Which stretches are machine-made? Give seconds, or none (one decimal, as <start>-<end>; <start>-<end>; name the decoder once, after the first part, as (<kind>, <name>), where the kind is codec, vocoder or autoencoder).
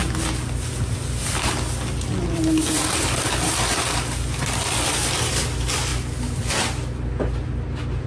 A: none